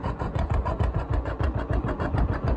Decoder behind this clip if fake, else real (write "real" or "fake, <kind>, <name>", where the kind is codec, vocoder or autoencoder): fake, vocoder, Vocos